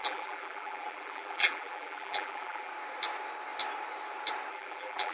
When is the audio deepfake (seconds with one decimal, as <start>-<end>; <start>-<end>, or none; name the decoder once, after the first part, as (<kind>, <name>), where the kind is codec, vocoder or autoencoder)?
0.0-2.7 (vocoder, BigVGAN v2); 4.5-5.1